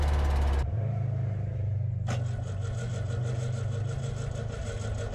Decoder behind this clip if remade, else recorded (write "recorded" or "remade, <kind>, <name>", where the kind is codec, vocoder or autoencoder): recorded